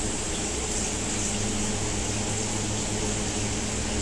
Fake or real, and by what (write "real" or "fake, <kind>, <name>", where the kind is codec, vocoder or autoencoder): real